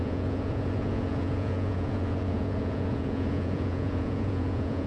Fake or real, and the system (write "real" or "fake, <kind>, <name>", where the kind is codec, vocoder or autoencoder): fake, vocoder, Vocos